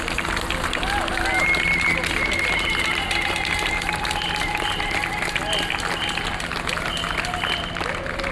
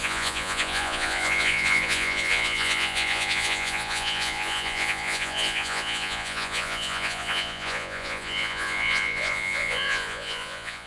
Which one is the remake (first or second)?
second